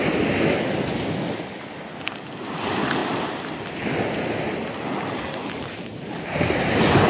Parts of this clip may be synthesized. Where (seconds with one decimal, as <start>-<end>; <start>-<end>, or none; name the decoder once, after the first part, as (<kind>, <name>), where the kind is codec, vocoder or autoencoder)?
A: none